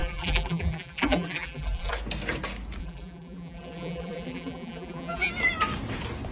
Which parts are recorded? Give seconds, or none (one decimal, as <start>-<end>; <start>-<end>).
1.9-2.8; 5.3-6.3